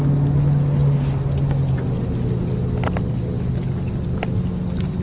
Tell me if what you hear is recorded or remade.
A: recorded